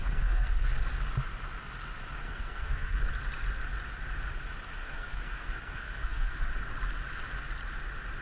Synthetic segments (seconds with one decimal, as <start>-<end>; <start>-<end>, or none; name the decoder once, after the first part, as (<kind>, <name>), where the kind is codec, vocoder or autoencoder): 0.0-0.7 (codec, SNAC); 2.2-3.0; 4.8-6.5